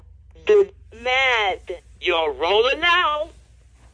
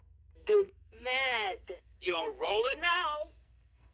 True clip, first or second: first